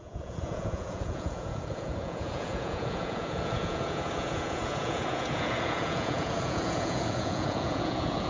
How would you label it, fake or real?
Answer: fake